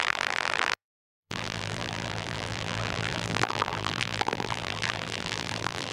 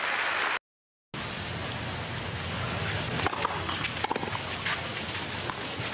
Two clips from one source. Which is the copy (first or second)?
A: first